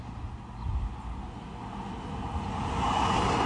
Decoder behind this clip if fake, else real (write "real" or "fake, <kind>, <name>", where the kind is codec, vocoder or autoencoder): real